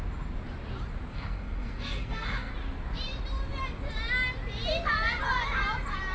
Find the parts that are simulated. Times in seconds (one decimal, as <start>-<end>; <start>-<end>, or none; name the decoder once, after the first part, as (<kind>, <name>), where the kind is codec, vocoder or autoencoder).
1.1-2.5 (codec, SNAC)